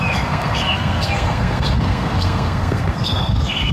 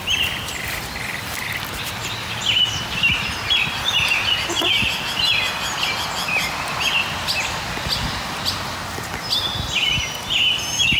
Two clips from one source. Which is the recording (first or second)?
second